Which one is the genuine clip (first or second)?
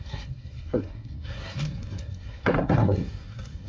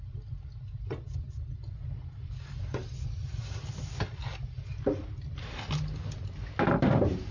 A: second